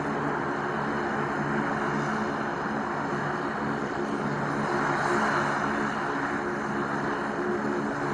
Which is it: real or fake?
real